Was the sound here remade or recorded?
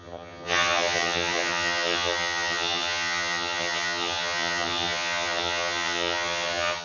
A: remade